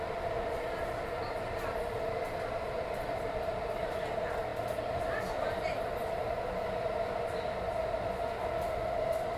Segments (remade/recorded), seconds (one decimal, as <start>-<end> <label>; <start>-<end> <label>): 0.0-9.4 recorded